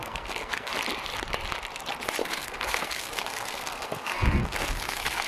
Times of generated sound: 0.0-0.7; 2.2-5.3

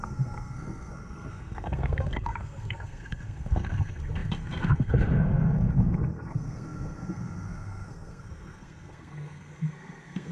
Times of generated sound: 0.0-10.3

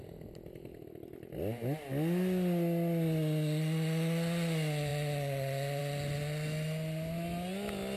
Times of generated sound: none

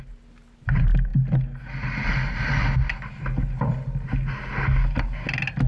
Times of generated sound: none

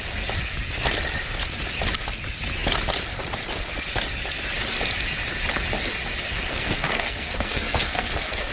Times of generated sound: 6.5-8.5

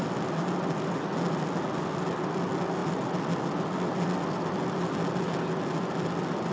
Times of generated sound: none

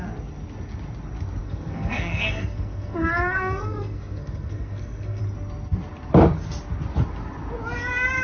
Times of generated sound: 1.4-5.2

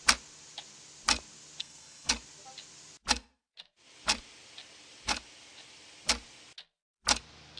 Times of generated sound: 1.6-2.1